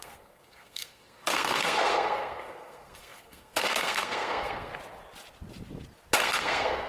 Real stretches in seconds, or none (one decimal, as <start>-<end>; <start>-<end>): 4.7-6.2